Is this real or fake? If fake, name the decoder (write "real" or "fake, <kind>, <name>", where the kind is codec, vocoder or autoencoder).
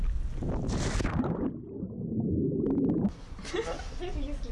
real